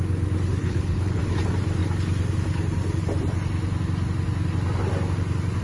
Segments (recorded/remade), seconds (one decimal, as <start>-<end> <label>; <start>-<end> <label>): 0.0-0.6 recorded; 0.6-1.2 remade; 1.2-5.6 recorded